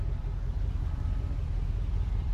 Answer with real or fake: fake